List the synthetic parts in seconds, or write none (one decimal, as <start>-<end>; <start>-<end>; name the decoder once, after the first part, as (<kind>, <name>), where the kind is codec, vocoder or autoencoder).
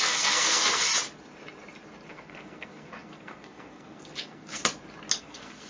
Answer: 0.0-0.9 (codec, SNAC); 2.1-4.6; 5.2-5.7